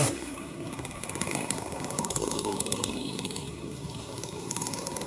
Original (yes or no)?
no